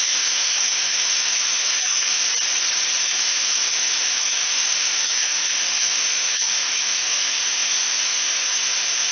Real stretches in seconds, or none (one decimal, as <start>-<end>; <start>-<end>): 2.3-3.0